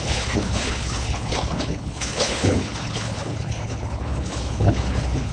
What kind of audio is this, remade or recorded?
remade